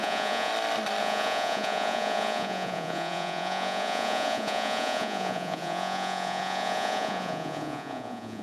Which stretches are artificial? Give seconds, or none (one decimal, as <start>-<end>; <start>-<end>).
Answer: 0.0-0.5; 1.0-8.4